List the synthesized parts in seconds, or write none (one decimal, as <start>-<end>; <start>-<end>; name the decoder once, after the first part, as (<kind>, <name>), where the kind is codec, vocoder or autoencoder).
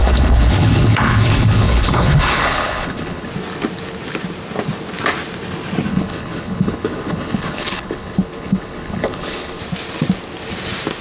0.0-3.3 (codec, HILCodec); 5.9-9.6